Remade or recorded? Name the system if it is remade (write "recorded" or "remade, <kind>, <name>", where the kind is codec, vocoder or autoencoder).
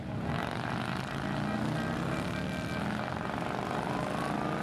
recorded